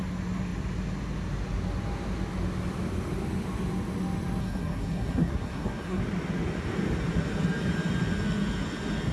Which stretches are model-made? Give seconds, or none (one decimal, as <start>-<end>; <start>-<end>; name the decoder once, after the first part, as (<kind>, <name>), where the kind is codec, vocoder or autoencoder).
4.4-6.0 (codec, SNAC)